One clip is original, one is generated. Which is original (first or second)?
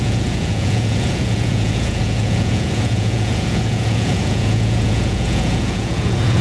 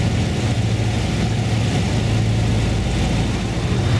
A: second